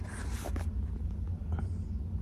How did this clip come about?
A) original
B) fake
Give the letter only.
A